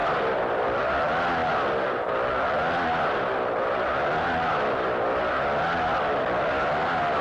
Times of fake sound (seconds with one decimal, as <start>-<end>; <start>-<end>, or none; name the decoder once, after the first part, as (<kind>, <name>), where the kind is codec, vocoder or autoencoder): 0.0-0.8 (vocoder, BigVGAN v2); 1.4-5.2